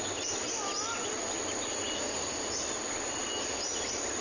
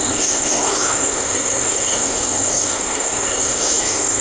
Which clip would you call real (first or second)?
first